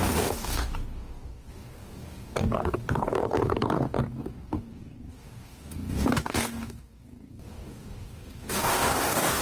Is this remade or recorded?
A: remade